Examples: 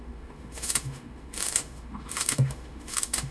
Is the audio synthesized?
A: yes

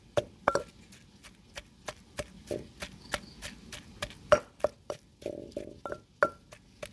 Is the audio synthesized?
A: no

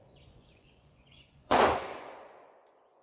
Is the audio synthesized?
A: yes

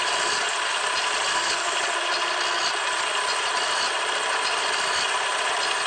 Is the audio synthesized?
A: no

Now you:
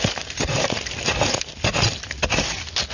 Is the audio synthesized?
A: no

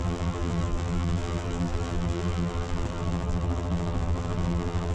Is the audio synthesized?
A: yes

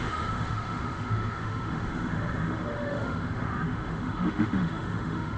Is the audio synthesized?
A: yes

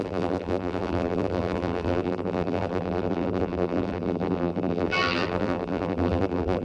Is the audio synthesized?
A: yes